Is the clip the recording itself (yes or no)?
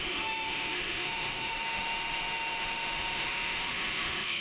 no